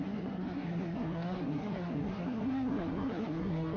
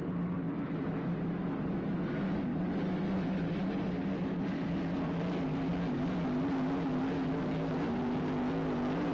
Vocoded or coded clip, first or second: first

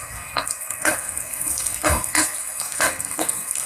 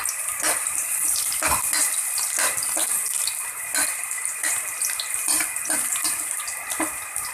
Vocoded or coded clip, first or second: first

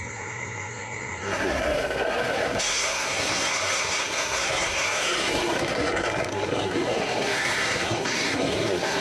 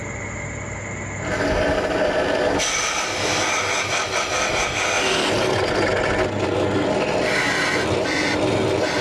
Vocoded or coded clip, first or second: first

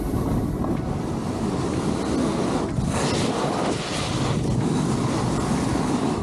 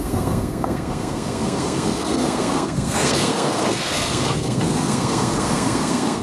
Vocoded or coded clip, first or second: second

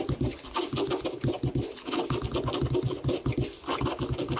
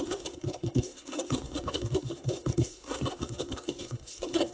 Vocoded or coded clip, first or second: second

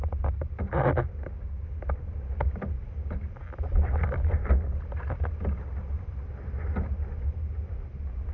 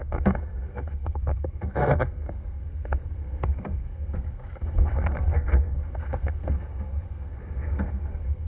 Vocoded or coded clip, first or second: second